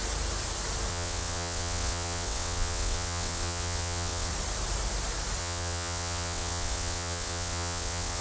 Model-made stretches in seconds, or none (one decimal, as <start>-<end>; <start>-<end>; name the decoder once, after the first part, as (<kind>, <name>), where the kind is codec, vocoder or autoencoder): 0.9-4.3 (vocoder, WaveNeXt); 5.4-8.2